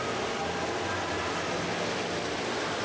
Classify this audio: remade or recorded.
recorded